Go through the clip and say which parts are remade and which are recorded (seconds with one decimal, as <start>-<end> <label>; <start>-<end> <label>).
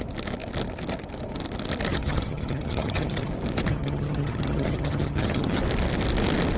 0.0-1.9 recorded; 1.9-3.3 remade; 3.3-3.7 recorded; 3.7-5.6 remade; 5.6-6.6 recorded